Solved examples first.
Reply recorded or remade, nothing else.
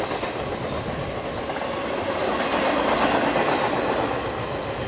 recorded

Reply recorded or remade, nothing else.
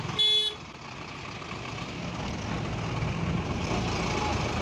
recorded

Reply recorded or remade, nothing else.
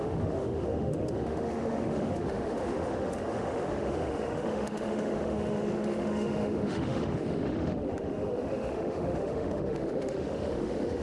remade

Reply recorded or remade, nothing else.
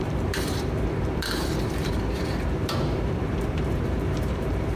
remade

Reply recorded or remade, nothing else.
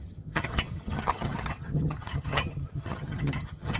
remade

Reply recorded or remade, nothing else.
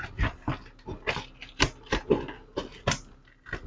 recorded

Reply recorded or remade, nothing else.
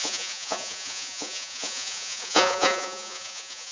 remade